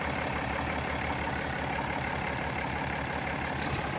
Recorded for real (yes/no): no